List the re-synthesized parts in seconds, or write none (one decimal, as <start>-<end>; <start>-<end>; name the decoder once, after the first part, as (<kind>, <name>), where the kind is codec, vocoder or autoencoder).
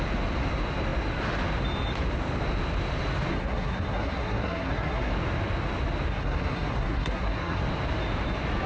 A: 3.3-5.1 (codec, SNAC); 6.1-7.6